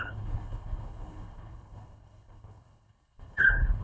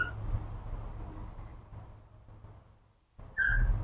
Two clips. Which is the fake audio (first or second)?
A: first